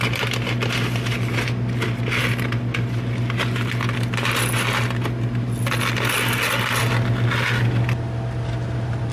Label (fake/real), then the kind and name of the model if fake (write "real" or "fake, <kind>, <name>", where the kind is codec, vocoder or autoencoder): real